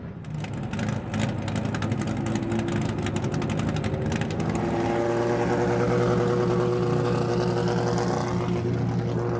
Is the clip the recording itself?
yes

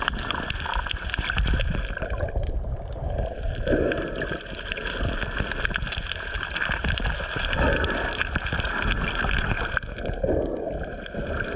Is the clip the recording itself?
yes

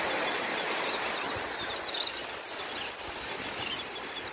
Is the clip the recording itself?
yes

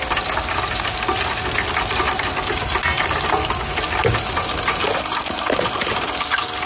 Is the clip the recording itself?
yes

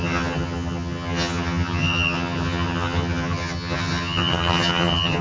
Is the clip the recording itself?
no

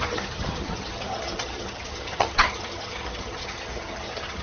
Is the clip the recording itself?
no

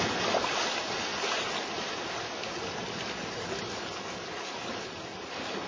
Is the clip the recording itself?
yes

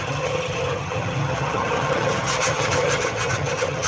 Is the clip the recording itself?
no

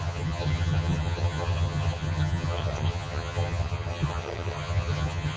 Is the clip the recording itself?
no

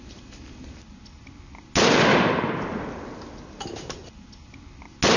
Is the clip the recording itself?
yes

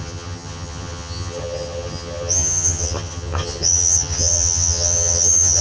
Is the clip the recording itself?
no